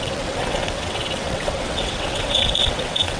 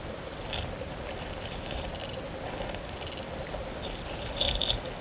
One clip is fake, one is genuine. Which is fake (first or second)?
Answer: first